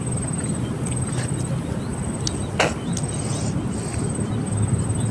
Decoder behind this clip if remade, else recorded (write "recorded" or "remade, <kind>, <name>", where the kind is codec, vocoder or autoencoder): recorded